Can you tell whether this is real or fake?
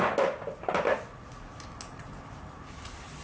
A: real